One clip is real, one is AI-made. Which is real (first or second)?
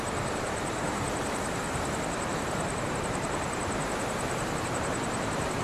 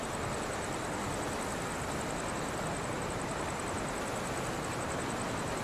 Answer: second